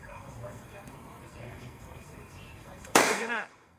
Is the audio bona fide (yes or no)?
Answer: no